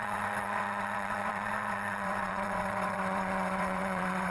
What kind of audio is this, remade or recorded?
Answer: remade